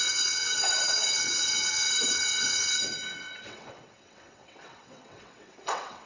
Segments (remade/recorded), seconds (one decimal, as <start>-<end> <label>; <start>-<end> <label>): 0.0-6.1 remade